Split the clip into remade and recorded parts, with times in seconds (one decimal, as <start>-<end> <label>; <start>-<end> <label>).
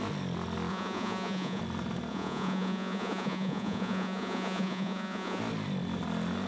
0.0-0.7 recorded; 0.7-1.6 remade; 1.6-2.1 recorded; 2.1-5.4 remade; 5.4-6.5 recorded